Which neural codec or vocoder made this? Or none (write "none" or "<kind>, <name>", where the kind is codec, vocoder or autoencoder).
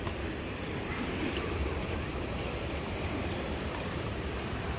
vocoder, BigVGAN v2